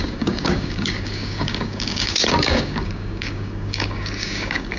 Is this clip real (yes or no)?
no